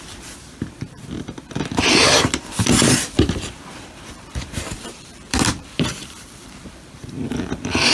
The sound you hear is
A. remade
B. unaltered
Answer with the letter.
A